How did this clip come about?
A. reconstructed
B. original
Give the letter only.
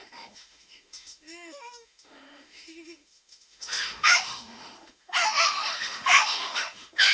A